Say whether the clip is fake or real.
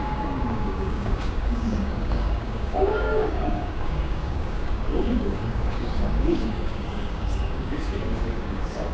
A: fake